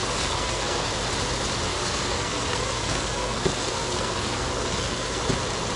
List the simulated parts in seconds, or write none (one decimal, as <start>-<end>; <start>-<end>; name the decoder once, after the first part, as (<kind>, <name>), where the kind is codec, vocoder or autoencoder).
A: 0.0-0.9 (codec, SNAC); 1.7-5.2